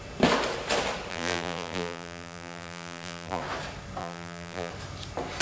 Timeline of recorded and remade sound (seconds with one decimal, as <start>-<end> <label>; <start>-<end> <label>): 0.0-1.1 recorded; 1.1-3.4 remade; 3.4-4.0 recorded; 4.0-4.7 remade; 4.7-5.4 recorded